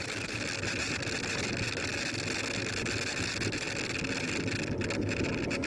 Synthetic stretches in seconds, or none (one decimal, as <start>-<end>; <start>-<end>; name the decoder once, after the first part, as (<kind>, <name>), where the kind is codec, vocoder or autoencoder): 0.0-1.9 (vocoder, BigVGAN v2); 5.3-5.7